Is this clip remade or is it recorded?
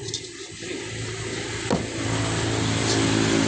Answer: recorded